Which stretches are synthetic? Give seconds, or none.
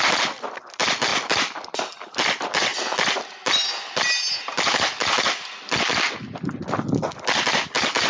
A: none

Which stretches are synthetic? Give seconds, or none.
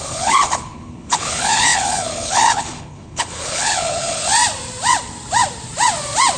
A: 0.0-4.3 (codec, HILCodec)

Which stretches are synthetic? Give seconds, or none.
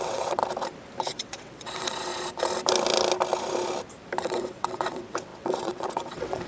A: 0.0-0.4 (vocoder, WaveNeXt); 1.0-2.1; 4.2-6.5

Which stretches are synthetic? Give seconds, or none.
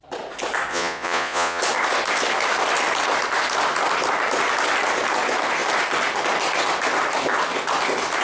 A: 0.7-1.6 (vocoder, Vocos)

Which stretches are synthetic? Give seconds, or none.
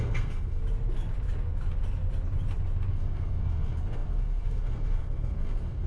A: 0.0-0.6 (codec, SNAC); 2.9-5.9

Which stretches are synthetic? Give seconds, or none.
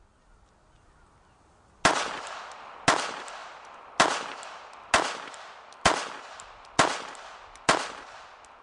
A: none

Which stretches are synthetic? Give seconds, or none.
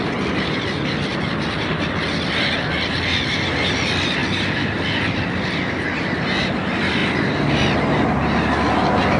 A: 1.1-1.7 (vocoder, BigVGAN v2)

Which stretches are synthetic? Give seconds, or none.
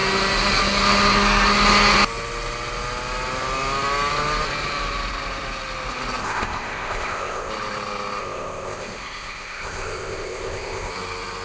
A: 6.2-7.5 (codec, ZipCodec); 8.2-10.9